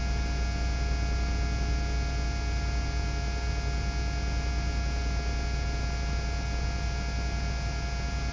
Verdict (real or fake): real